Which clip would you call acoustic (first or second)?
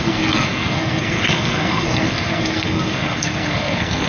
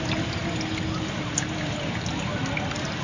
second